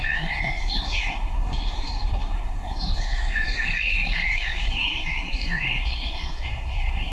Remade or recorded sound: remade